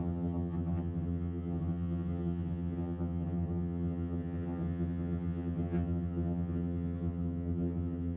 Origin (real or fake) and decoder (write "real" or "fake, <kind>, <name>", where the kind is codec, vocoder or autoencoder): fake, vocoder, HiFi-GAN